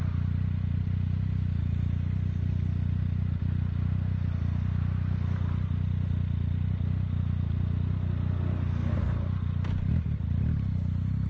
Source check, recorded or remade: recorded